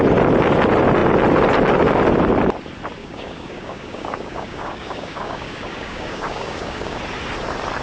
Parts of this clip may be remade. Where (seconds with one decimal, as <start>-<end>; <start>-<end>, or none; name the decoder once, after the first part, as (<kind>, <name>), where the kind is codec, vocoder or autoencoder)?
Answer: 3.0-7.0 (codec, DAC)

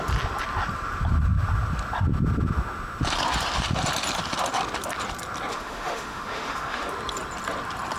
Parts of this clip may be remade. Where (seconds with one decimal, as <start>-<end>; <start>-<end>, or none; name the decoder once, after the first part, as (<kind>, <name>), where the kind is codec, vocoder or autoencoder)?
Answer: 5.5-6.9 (autoencoder, DAC-VAE)

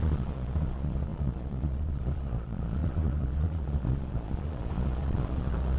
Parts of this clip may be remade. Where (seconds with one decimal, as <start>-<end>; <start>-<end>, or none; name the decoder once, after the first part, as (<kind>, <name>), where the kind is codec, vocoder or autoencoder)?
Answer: 0.0-5.8 (vocoder, Vocos)

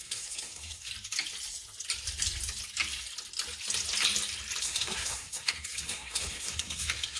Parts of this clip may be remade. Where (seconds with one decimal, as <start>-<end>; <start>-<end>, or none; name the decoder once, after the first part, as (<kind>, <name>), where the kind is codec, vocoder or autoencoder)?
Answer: 0.0-0.9 (codec, SNAC); 4.6-7.2

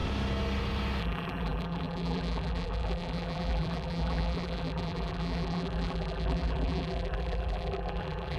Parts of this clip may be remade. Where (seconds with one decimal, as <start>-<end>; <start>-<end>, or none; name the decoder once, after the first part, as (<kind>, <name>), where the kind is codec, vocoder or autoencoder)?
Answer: 1.0-8.4 (vocoder, BigVGAN v2)

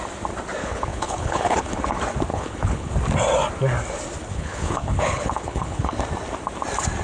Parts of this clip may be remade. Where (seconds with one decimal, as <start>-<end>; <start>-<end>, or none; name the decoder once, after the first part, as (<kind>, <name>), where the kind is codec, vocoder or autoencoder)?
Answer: 0.6-1.8 (codec, HILCodec); 2.3-2.9; 4.2-6.0